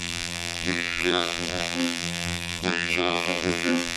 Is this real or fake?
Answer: fake